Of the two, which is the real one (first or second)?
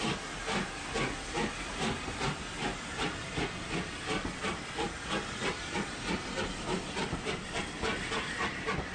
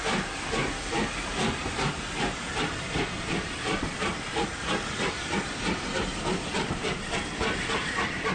first